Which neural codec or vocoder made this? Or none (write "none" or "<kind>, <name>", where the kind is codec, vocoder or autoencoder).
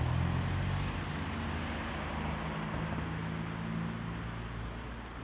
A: none